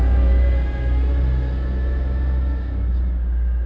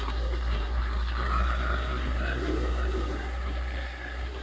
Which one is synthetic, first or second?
second